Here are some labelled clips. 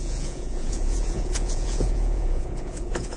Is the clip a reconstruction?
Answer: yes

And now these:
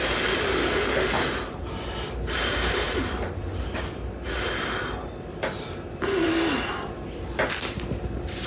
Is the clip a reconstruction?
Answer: no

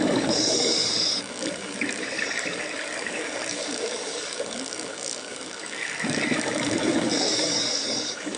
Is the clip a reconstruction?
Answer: yes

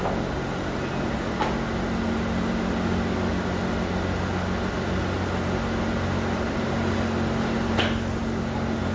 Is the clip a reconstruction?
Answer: no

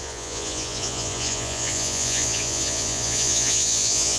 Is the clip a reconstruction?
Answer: yes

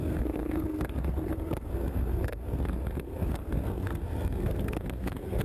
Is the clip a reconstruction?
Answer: yes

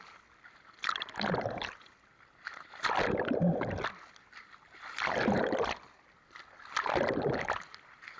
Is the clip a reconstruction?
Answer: no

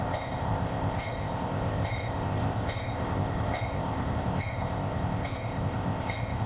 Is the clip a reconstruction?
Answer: yes